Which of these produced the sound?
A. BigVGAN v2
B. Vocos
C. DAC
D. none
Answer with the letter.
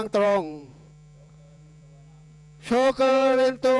B